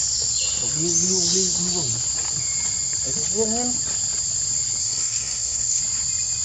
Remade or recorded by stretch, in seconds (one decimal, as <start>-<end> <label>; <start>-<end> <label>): 0.0-4.8 recorded; 4.8-5.8 remade; 5.8-6.4 recorded